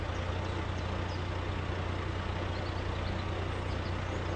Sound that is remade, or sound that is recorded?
recorded